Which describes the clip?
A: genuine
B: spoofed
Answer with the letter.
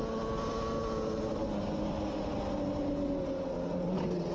A